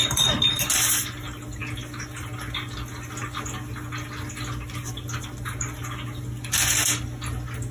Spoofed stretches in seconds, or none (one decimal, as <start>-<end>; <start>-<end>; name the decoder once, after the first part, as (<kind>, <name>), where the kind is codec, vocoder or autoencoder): none